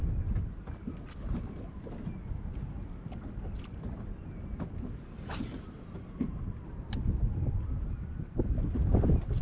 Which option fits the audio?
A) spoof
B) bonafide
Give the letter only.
B